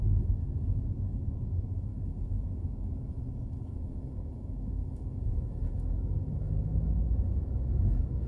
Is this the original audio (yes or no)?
no